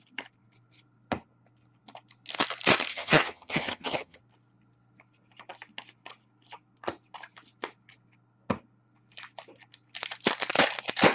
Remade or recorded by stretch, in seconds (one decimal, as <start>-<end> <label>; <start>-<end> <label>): 0.0-2.9 recorded; 2.9-4.2 remade; 4.2-11.1 recorded